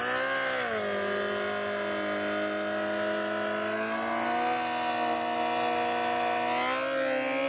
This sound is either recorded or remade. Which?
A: recorded